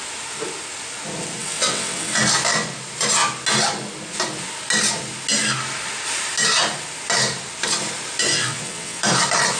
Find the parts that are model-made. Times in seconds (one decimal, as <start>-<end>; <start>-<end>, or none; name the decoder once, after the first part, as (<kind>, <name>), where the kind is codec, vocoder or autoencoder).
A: 1.4-2.2 (vocoder, WaveNeXt); 8.3-9.0